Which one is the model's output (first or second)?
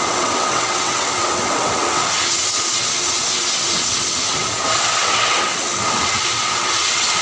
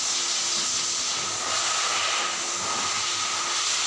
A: first